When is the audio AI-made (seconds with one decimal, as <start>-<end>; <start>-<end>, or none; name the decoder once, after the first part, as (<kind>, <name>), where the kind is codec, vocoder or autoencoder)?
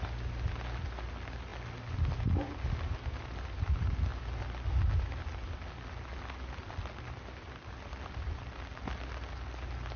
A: none